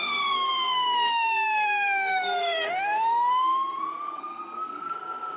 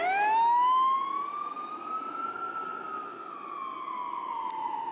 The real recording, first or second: second